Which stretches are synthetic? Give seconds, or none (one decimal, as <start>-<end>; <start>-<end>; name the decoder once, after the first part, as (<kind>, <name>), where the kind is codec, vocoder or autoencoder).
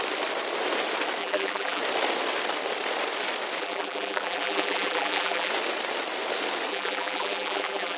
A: 1.2-1.8 (vocoder, BigVGAN v2); 3.6-5.5; 6.7-8.0